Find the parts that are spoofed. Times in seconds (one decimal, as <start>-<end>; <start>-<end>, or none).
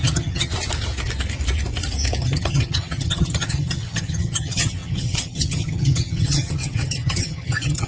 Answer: 0.0-0.5; 2.2-7.9